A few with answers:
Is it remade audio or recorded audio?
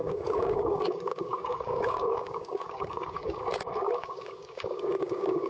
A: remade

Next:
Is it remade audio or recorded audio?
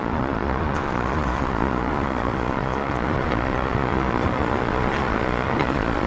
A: remade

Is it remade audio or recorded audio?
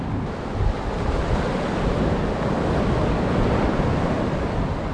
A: recorded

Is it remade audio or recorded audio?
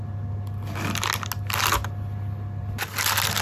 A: recorded